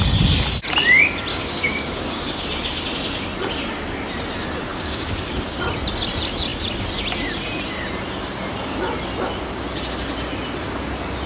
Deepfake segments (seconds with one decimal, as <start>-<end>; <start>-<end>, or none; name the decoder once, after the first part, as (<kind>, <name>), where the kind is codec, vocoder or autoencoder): 1.3-2.4 (codec, DAC); 4.7-5.6

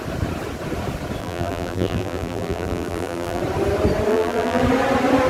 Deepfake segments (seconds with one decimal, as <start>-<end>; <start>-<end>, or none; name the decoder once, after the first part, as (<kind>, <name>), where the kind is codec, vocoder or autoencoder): 1.2-3.4 (vocoder, BigVGAN v2); 4.1-4.6

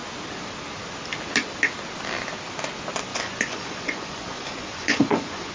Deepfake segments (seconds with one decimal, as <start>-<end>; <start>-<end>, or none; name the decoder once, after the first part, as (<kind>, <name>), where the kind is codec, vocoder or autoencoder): 3.1-5.5 (vocoder, Vocos)